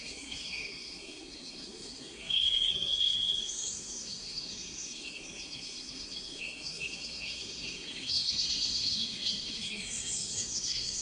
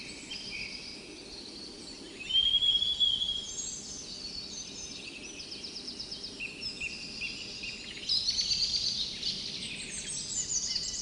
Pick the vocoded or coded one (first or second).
first